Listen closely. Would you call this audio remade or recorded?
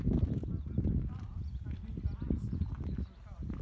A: recorded